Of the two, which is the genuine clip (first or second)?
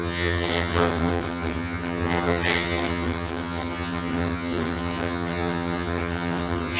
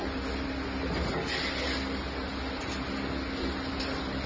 second